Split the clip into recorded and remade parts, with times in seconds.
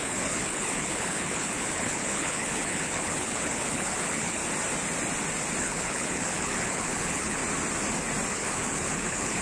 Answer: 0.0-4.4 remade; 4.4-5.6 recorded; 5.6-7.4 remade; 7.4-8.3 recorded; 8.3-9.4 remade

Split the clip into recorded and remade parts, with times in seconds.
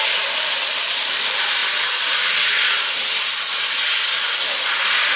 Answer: 0.0-5.2 recorded